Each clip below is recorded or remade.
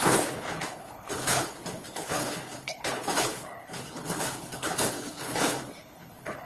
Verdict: remade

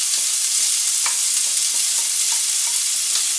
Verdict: recorded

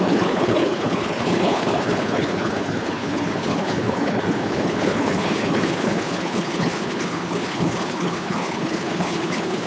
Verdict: remade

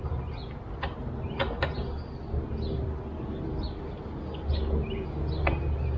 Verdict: recorded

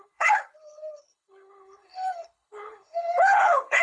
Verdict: remade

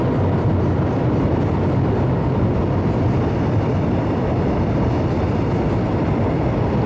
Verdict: recorded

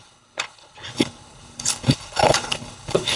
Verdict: remade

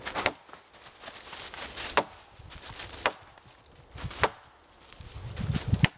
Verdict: recorded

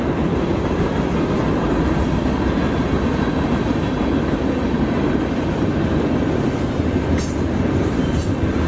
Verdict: recorded